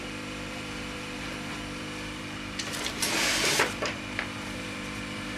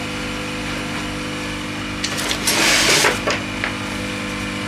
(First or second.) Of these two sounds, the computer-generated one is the first